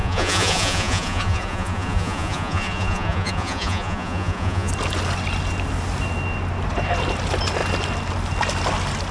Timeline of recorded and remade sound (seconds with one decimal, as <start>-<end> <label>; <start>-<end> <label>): 0.0-4.7 remade; 4.7-9.1 recorded